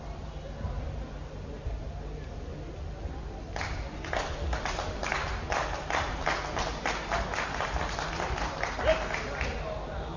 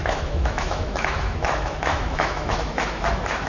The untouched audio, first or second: first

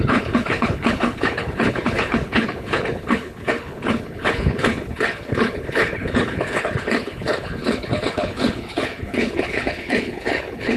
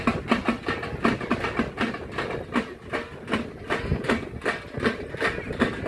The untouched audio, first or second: second